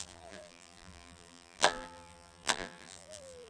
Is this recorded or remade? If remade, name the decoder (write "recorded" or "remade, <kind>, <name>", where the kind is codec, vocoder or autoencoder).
remade, vocoder, BigVGAN v2